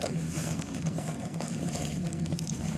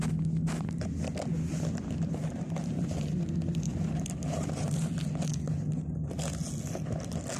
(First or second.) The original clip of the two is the second